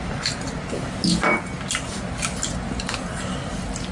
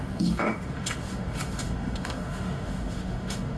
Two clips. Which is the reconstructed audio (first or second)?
second